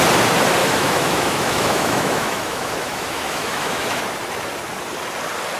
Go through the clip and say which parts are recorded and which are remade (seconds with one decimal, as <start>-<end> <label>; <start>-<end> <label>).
0.0-0.6 recorded; 0.6-4.0 remade; 4.0-5.6 recorded